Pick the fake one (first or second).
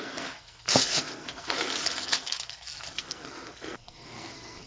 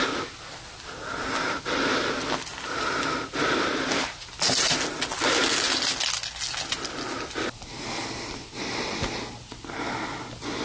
first